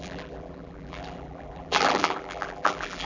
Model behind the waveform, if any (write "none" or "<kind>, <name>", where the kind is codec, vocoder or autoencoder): vocoder, BigVGAN v2